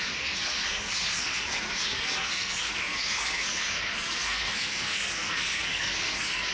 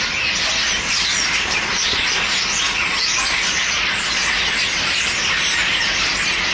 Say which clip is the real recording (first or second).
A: second